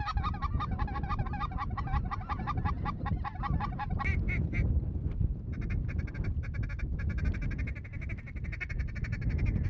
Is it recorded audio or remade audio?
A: recorded